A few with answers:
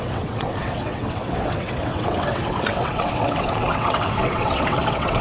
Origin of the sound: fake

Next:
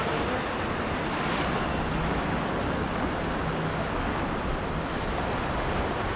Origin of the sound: real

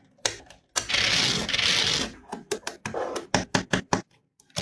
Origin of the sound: real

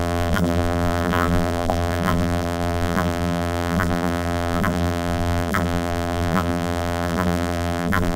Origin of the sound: fake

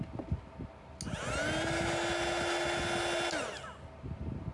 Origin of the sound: real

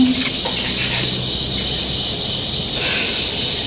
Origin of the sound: real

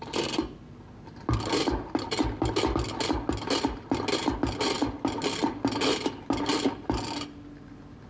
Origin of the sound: real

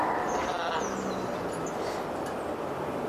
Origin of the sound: real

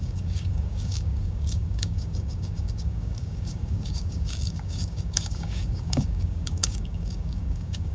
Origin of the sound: fake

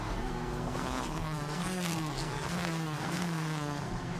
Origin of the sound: fake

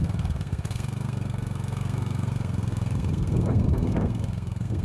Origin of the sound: fake